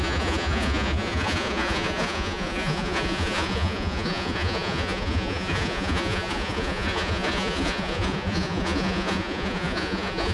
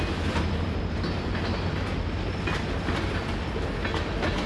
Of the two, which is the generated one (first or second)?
first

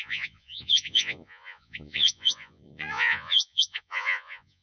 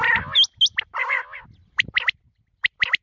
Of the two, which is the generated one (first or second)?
first